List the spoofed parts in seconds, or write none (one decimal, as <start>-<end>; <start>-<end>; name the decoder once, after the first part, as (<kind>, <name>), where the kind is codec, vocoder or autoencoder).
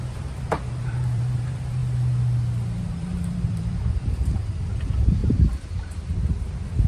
0.0-1.8 (vocoder, BigVGAN v2); 2.8-5.2